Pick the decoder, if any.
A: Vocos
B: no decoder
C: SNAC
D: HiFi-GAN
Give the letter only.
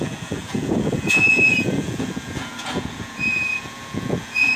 A